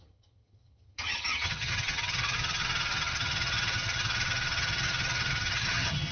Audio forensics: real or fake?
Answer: fake